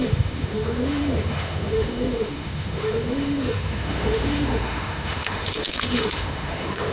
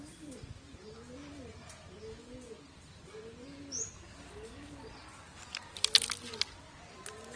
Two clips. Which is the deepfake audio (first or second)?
first